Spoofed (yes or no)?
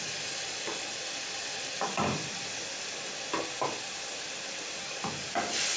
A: no